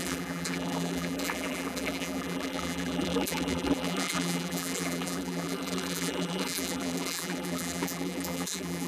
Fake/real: fake